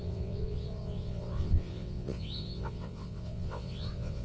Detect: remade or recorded remade